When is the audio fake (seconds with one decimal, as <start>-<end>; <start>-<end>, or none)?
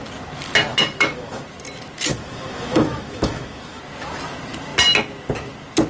0.7-1.4; 2.1-3.8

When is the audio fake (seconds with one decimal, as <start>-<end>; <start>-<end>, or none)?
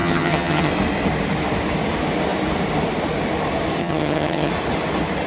0.0-0.7; 3.8-4.5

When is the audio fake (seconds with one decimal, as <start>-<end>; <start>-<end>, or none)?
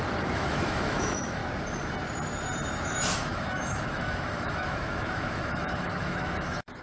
0.0-1.4; 2.8-6.8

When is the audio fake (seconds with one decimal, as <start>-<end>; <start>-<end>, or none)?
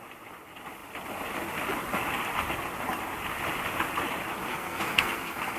4.5-5.6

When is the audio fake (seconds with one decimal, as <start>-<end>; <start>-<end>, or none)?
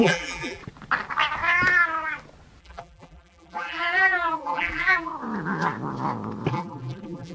0.0-0.6; 2.6-5.1; 6.5-7.3